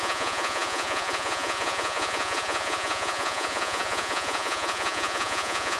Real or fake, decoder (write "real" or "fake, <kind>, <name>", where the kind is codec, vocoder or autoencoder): fake, vocoder, Vocos